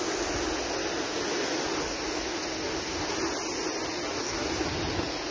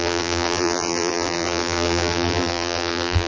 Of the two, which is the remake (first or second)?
second